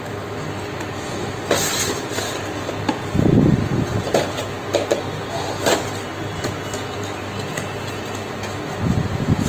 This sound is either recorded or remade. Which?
recorded